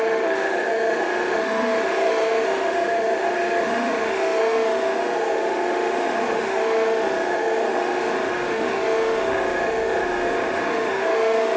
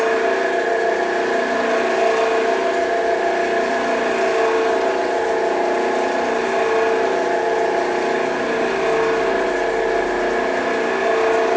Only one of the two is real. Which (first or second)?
second